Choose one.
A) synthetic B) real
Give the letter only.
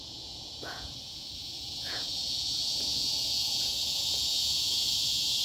A